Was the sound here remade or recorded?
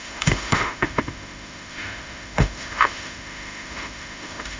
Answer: remade